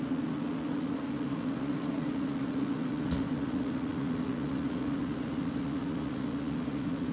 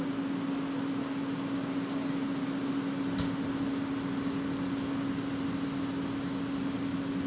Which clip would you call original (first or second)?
second